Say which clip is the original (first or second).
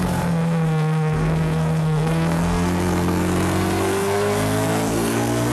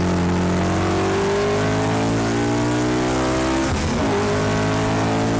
second